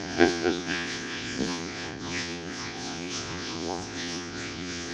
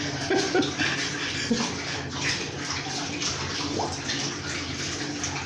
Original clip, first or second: second